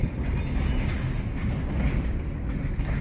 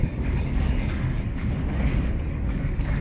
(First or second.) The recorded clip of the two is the first